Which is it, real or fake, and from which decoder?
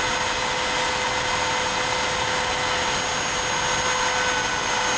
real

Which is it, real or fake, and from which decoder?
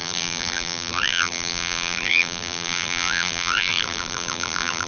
fake, vocoder, BigVGAN v2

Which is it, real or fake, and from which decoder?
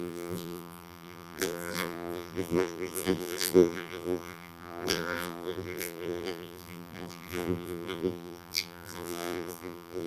fake, vocoder, BigVGAN v2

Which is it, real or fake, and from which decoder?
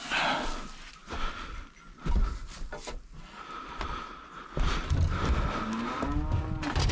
real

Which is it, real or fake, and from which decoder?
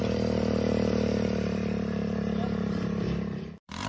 fake, vocoder, BigVGAN v2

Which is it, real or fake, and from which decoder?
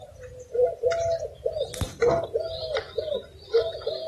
real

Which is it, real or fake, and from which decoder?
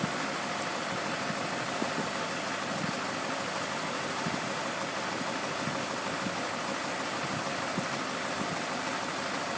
real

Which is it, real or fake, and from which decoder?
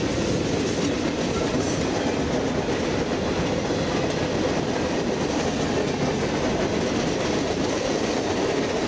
real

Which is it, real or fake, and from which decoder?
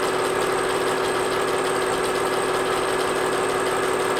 real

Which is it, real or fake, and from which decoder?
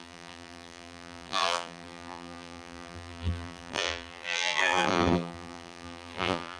fake, vocoder, BigVGAN v2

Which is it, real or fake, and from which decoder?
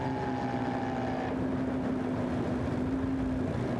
real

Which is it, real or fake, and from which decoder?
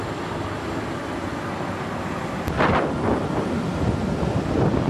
fake, vocoder, BigVGAN v2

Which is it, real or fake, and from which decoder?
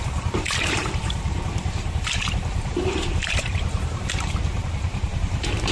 fake, vocoder, BigVGAN v2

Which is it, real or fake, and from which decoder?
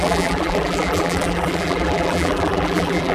fake, vocoder, BigVGAN v2